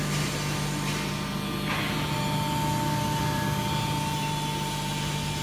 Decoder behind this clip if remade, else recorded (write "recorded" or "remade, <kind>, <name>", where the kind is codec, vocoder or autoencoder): recorded